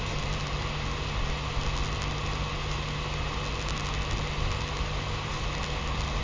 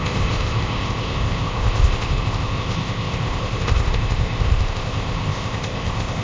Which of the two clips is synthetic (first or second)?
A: second